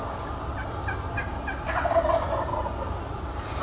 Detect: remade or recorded recorded